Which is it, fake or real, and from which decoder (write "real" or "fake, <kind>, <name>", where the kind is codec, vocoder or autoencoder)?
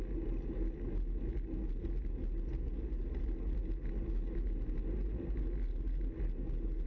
real